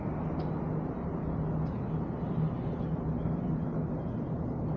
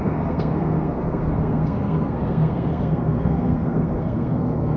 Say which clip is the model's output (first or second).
second